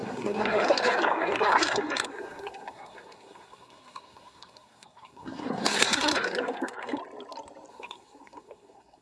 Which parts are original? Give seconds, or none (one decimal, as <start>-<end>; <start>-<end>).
7.0-7.7